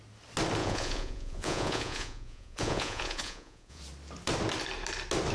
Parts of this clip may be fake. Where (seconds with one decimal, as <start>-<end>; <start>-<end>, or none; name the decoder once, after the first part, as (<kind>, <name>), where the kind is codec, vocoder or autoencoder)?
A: 0.6-3.8 (vocoder, Vocos)